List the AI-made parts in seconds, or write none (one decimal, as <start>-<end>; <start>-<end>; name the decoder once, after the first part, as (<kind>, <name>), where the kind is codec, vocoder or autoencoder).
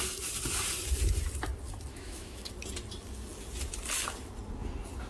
1.9-2.5 (autoencoder, DAC-VAE)